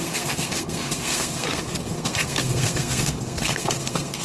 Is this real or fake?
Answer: fake